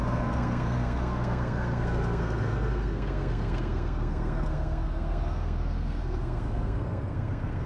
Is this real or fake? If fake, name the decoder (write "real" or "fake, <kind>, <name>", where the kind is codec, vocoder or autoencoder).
fake, codec, SNAC